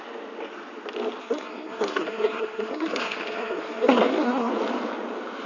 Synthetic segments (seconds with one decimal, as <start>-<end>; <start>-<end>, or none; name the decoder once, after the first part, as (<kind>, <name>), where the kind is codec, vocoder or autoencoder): 1.2-4.5 (codec, SNAC)